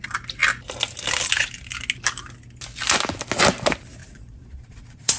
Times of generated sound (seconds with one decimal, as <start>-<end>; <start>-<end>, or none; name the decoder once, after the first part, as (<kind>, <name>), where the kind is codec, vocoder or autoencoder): 4.0-5.2 (vocoder, Vocos)